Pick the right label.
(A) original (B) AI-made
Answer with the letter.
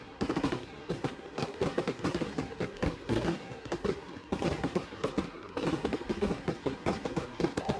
B